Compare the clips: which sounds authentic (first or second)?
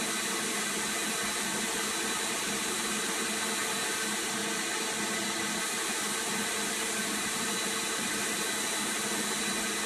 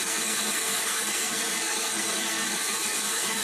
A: first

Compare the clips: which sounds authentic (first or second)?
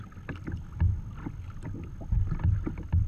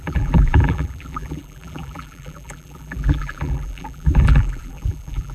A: first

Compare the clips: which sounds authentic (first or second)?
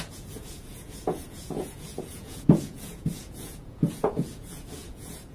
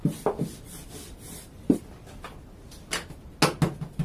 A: second